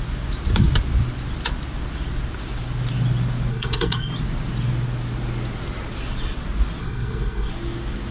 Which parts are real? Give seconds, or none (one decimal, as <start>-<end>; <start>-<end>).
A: 0.0-3.5; 4.1-6.8; 7.5-8.1